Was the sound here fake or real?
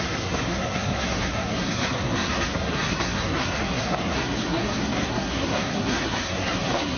fake